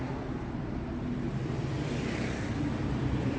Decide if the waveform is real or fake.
real